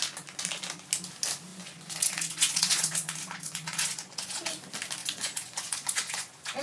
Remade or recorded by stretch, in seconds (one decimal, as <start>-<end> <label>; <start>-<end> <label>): 0.0-1.5 recorded; 1.5-4.5 remade; 4.5-5.0 recorded; 5.0-6.6 remade